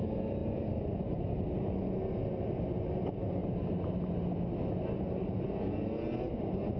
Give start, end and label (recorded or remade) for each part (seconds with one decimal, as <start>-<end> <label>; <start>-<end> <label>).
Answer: 0.0-6.8 recorded